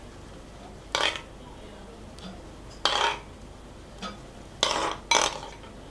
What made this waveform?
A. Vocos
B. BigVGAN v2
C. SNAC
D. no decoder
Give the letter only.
D